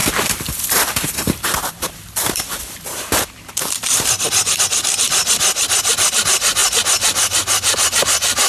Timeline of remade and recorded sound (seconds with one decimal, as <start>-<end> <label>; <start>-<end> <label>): 0.0-4.6 remade; 4.6-8.5 recorded